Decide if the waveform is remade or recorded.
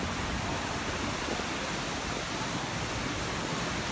remade